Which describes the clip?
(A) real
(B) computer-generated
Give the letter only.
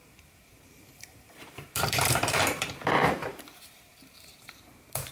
B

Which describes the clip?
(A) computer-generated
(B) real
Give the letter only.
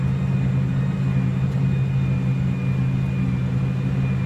B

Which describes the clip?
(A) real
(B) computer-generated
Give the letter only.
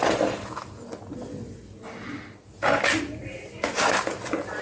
A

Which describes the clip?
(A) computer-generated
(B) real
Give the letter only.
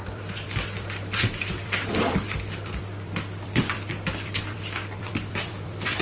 A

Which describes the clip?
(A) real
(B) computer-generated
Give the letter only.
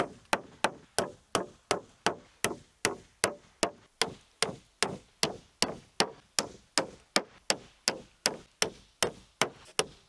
A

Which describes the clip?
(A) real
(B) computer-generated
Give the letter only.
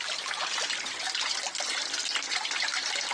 A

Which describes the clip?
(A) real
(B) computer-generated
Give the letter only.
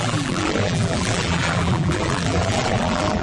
B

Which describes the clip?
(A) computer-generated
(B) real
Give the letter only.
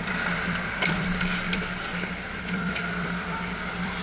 A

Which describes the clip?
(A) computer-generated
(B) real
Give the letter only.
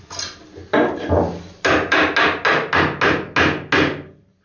B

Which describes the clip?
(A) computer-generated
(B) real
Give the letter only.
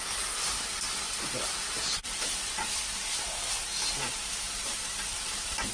A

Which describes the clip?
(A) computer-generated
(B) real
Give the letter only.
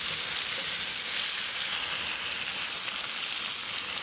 B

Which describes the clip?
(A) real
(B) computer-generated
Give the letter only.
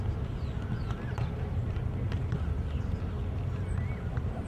A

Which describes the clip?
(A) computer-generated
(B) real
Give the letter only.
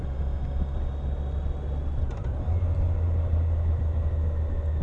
B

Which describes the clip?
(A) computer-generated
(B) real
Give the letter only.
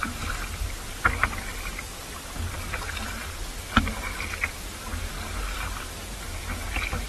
B